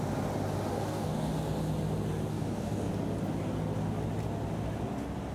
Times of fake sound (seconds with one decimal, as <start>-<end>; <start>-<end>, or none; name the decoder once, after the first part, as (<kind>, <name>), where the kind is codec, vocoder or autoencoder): 0.7-1.3 (codec, DAC); 2.3-2.9